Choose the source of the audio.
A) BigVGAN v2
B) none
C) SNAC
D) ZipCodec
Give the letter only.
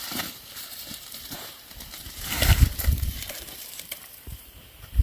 A